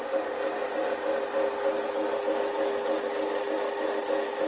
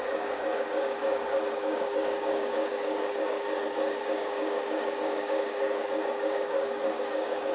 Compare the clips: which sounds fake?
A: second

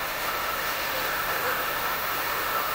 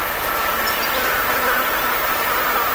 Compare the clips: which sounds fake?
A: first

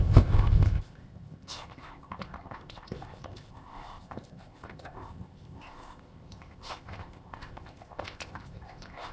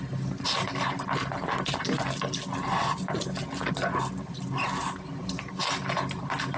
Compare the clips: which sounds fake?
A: first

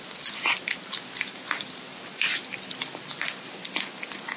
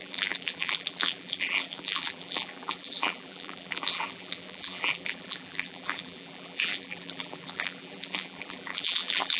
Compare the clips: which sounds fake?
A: second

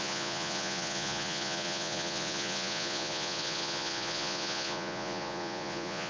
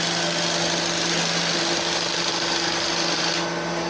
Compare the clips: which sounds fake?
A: first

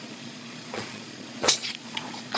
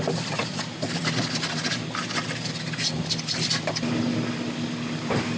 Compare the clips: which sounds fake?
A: first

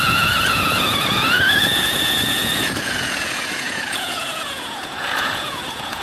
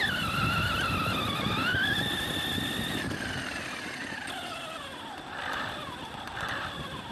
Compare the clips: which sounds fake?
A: first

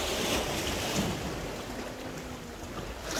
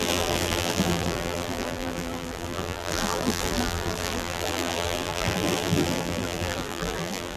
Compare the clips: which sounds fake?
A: second